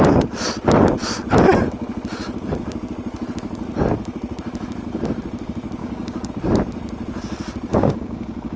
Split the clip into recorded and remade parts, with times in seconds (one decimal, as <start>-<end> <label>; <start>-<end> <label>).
0.0-5.8 recorded; 5.8-6.3 remade; 6.3-7.7 recorded; 7.7-8.6 remade